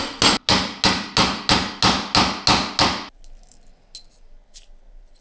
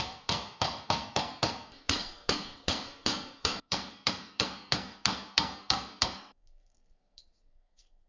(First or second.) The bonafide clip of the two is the first